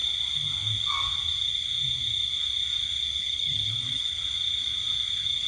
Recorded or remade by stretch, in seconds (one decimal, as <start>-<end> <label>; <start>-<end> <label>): 0.0-3.2 recorded; 3.2-4.2 remade; 4.2-5.5 recorded